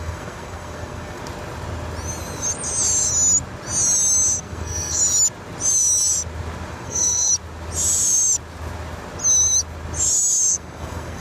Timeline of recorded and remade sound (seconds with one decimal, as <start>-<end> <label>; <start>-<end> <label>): 0.0-1.2 remade; 1.2-4.4 recorded; 4.4-5.0 remade; 5.0-6.7 recorded; 6.7-7.3 remade; 7.3-10.5 recorded; 10.5-11.2 remade